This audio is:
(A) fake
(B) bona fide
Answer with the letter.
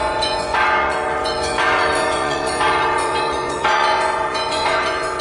A